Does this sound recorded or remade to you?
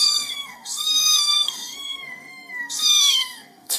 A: remade